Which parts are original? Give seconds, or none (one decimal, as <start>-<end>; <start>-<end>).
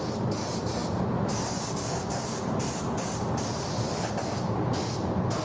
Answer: 0.0-5.4